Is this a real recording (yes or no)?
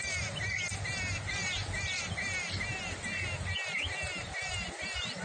yes